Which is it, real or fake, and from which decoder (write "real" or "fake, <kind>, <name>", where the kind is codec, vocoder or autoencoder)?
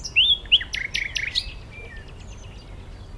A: real